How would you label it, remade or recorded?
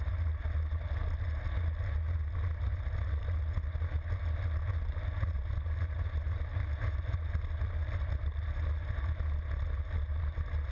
recorded